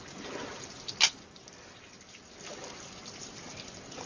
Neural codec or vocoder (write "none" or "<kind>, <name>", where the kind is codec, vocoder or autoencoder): none